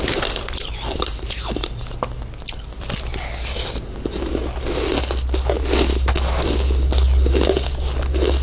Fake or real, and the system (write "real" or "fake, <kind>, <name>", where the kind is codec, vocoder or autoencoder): real